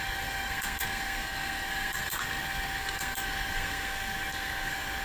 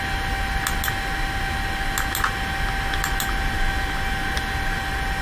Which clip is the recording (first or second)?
second